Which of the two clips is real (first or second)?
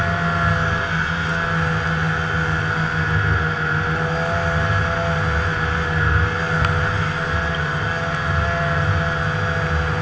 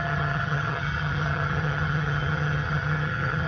first